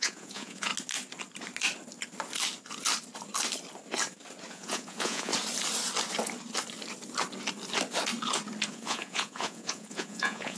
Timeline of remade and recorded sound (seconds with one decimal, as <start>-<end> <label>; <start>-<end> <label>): 0.0-0.7 remade; 0.7-4.5 recorded; 4.5-5.3 remade; 5.3-8.7 recorded; 8.7-10.6 remade